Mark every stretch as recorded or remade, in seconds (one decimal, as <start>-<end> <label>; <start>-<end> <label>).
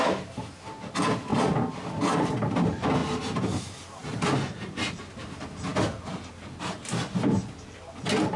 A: 0.0-8.4 recorded